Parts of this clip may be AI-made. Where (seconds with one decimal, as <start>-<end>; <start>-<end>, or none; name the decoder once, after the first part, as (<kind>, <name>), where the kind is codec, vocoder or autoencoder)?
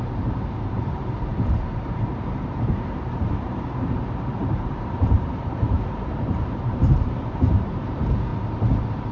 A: 0.0-8.3 (vocoder, BigVGAN v2)